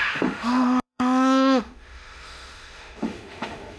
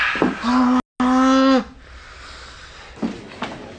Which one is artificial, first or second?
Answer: first